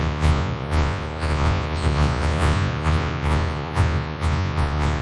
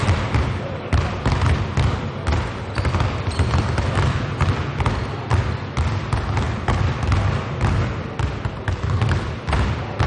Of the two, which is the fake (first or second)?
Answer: first